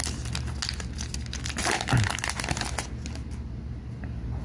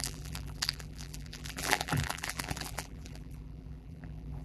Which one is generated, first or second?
second